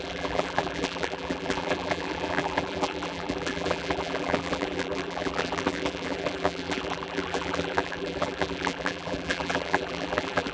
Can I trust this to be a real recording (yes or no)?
no